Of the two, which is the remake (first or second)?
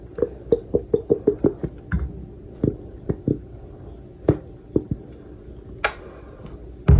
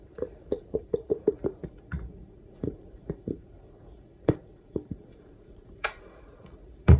second